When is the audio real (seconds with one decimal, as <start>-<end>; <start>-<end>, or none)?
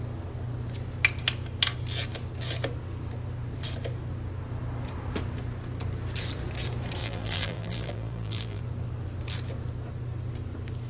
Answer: 0.0-7.0; 8.6-10.9